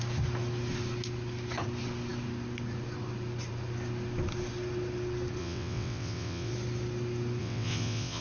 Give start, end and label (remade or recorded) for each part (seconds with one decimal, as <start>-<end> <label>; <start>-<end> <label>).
0.0-5.4 recorded; 5.4-6.5 remade; 6.5-7.4 recorded; 7.4-8.2 remade

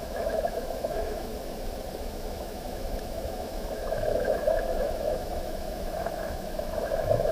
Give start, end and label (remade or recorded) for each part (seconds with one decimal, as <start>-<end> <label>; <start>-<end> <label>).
0.0-1.3 remade; 1.3-2.0 recorded; 2.0-7.3 remade